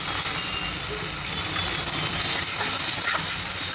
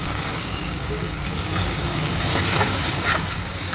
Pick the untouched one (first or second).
first